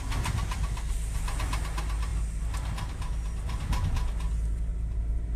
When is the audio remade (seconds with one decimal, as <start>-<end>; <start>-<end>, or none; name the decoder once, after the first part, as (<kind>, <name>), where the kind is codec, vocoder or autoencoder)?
none